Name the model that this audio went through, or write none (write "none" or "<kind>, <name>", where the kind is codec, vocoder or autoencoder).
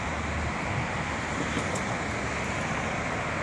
none